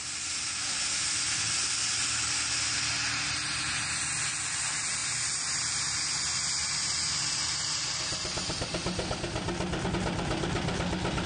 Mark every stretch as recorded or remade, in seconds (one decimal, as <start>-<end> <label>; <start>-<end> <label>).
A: 0.0-11.3 recorded